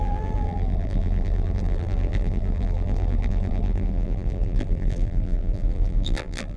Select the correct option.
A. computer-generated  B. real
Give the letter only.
A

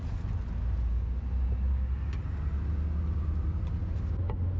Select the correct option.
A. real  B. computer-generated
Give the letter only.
A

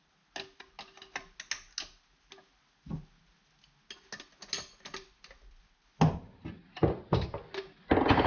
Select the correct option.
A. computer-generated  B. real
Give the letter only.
B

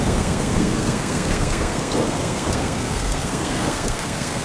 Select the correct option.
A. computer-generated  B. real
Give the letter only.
A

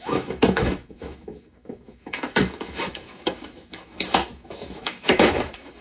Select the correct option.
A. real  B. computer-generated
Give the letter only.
B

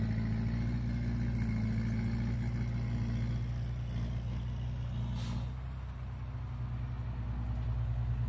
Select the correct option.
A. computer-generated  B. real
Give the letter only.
B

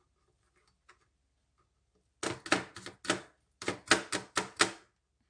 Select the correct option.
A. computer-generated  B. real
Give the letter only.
B